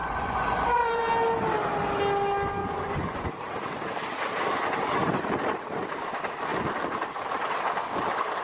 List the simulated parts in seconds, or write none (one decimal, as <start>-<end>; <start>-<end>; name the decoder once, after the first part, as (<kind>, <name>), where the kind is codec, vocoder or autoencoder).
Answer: 0.0-1.0 (vocoder, Vocos); 2.6-3.3